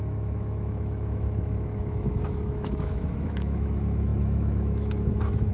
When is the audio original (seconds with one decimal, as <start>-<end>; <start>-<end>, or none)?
none